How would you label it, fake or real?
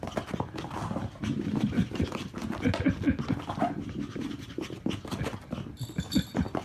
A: real